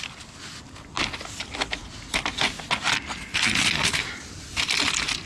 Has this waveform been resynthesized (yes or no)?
no